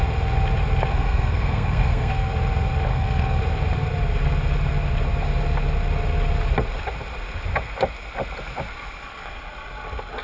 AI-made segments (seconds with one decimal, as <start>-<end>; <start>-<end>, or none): 0.9-2.3; 2.9-3.4